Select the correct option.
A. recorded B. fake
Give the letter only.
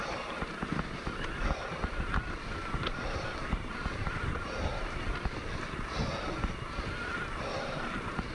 A